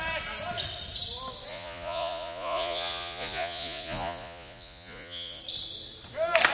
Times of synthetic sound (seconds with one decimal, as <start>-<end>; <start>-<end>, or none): 1.5-5.4